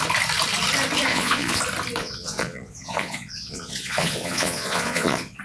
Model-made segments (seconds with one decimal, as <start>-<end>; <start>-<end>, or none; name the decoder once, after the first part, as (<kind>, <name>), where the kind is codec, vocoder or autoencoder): 1.1-1.6 (vocoder, Vocos); 2.0-5.4